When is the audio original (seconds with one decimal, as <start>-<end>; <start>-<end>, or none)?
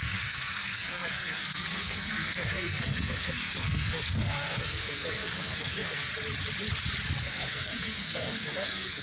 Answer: 6.1-7.2